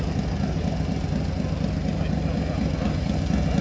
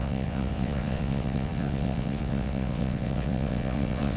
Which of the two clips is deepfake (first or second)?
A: second